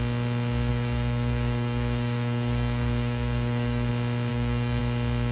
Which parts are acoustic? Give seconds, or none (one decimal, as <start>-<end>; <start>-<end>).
0.0-0.7; 3.9-4.3; 4.8-5.3